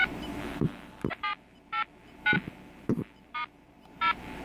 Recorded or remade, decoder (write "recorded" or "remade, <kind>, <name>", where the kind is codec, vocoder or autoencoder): remade, vocoder, BigVGAN v2